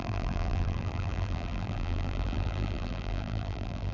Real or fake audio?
fake